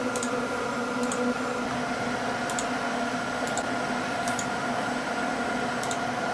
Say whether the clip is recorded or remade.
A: recorded